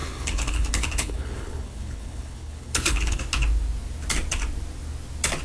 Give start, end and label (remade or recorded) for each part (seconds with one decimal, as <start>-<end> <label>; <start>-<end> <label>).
0.0-3.2 remade; 3.2-5.4 recorded